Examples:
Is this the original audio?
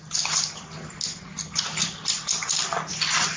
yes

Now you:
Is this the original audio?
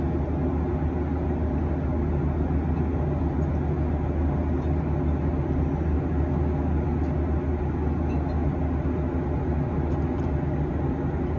yes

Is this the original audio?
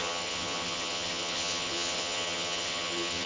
no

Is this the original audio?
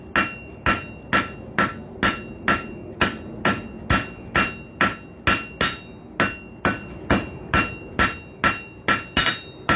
yes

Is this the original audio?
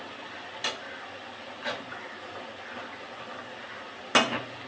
yes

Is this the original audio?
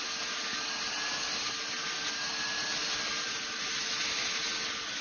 yes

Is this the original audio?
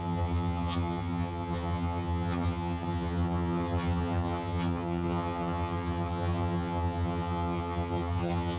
no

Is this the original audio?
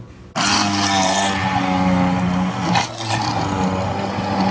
yes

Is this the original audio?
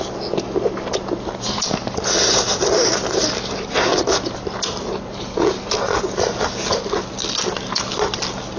yes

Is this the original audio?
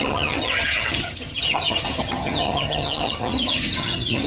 no